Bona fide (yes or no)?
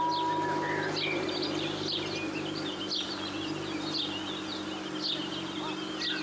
yes